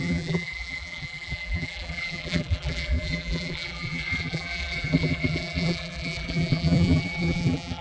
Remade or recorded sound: remade